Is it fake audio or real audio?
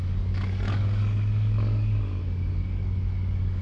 fake